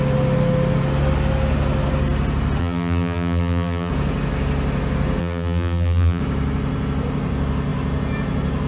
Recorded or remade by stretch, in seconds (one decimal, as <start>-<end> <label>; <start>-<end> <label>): 0.0-2.6 recorded; 2.6-3.9 remade; 3.9-5.2 recorded; 5.2-6.2 remade; 6.2-8.7 recorded